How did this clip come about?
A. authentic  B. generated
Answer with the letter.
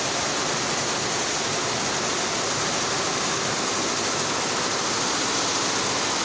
A